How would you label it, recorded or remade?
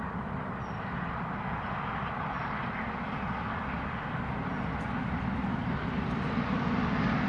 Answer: recorded